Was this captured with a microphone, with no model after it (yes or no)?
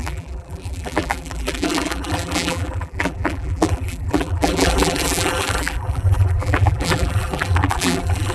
no